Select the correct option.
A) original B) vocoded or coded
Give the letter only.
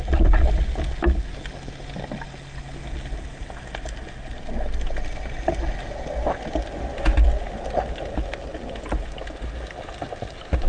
A